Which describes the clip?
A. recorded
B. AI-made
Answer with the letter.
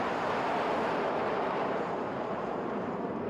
B